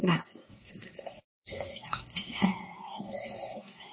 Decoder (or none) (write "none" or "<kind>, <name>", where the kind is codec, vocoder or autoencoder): codec, SNAC